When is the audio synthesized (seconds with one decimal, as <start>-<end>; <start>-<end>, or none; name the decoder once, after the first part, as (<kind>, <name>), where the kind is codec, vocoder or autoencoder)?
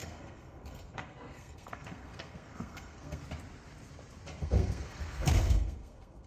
0.0-3.2 (codec, SNAC); 4.4-6.3